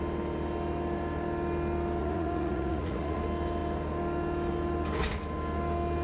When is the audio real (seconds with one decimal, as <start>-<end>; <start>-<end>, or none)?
0.0-2.0; 3.2-6.0